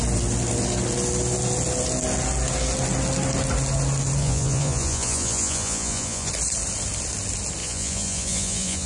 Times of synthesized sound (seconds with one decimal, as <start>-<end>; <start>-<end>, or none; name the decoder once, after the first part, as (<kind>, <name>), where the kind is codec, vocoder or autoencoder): 4.2-6.3 (vocoder, Vocos); 7.6-8.9